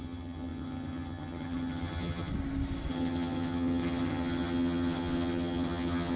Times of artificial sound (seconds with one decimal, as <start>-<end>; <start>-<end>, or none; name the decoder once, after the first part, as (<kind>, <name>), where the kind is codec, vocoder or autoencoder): 0.0-2.3 (vocoder, HiFi-GAN); 2.9-6.2